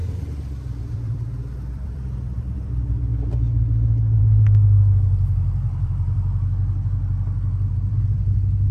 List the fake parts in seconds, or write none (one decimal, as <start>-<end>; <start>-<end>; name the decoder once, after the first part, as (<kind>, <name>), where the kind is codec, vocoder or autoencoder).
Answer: 0.0-3.1 (vocoder, BigVGAN v2); 4.2-8.7